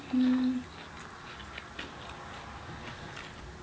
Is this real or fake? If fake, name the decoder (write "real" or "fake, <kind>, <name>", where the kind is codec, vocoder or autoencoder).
real